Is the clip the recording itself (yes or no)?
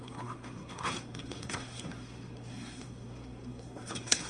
no